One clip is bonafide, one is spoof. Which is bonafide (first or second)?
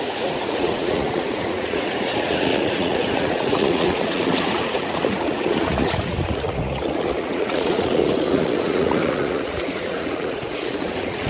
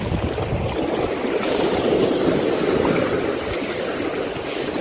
second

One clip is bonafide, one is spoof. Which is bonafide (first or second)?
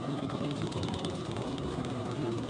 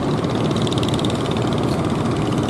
second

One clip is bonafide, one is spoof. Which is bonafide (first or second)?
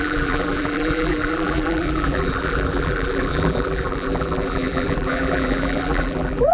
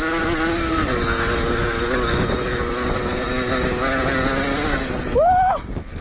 second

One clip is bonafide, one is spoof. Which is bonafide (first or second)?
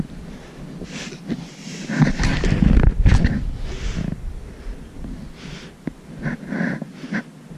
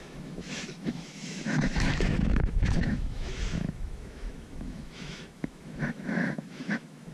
first